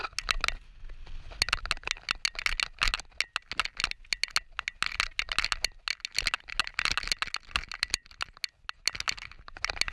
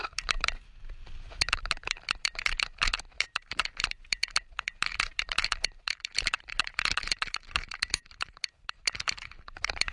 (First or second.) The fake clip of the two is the second